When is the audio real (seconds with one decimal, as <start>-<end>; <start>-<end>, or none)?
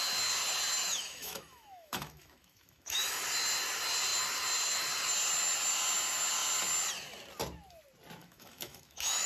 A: 0.0-0.8; 3.2-8.2